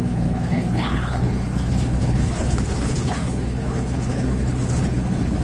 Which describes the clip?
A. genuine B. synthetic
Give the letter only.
B